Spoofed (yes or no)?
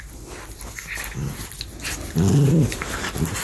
no